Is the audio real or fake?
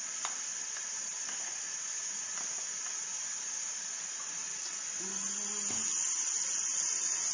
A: real